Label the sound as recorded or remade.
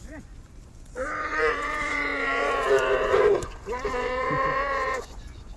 remade